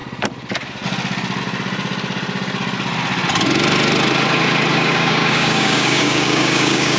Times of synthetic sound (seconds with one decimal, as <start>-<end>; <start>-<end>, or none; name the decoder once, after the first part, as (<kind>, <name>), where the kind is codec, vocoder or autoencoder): 4.7-7.0 (codec, DAC)